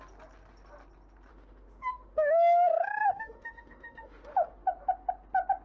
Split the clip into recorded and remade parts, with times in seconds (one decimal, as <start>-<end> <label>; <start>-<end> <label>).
0.0-1.3 recorded; 1.3-4.7 remade; 4.7-5.6 recorded